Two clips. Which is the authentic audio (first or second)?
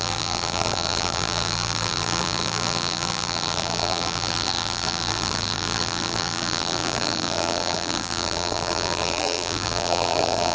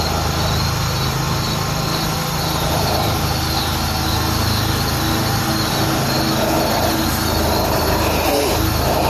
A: second